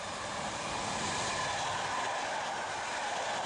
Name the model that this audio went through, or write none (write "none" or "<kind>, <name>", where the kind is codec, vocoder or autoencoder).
none